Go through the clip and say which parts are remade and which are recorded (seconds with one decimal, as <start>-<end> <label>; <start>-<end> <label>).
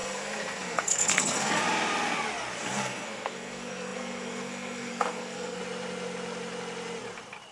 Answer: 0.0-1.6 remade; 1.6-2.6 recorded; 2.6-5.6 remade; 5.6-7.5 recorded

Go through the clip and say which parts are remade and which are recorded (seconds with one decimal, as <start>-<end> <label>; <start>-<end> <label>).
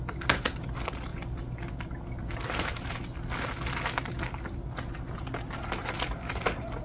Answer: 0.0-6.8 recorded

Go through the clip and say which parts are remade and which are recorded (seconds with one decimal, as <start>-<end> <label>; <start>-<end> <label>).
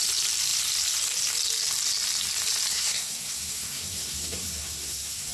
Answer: 0.0-2.7 recorded; 2.7-5.3 remade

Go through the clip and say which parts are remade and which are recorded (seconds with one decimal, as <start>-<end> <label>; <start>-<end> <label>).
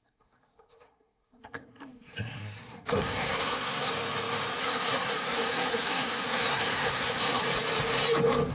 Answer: 0.0-3.9 remade; 3.9-4.6 recorded; 4.6-7.4 remade; 7.4-8.5 recorded